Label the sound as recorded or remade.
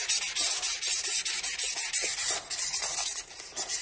recorded